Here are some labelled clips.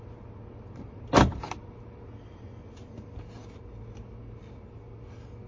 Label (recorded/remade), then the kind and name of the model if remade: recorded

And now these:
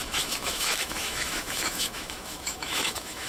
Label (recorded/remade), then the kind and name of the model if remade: remade, autoencoder, DAC-VAE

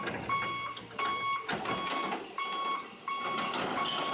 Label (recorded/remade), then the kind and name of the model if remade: recorded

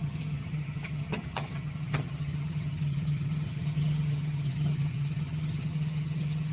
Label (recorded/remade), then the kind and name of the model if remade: remade, vocoder, HiFi-GAN